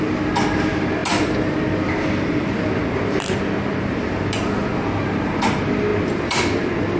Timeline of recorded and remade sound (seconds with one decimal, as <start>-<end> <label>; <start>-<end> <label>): 0.0-7.0 recorded